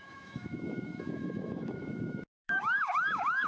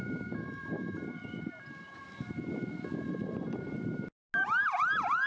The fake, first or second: first